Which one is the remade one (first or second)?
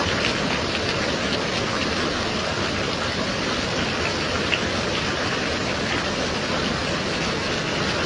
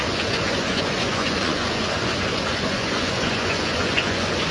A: second